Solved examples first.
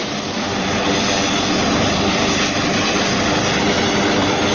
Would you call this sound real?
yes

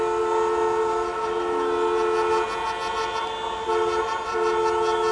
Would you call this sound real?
yes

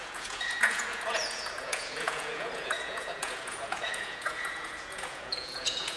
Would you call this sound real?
no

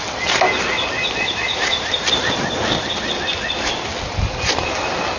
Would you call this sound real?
yes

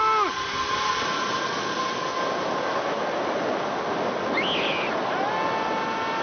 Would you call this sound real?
yes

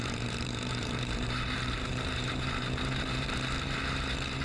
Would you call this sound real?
no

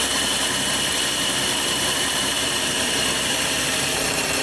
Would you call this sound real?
no